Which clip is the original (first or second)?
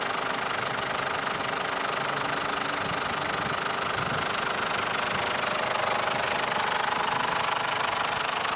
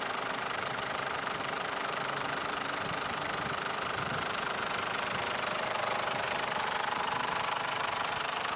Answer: first